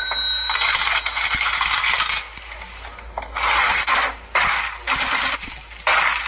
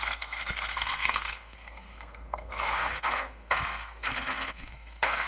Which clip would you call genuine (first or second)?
first